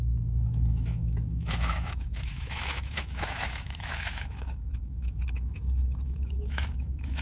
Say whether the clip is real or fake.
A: fake